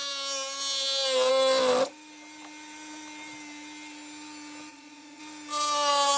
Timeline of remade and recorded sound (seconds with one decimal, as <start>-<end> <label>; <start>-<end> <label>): 0.0-4.7 recorded; 4.7-5.2 remade; 5.2-6.2 recorded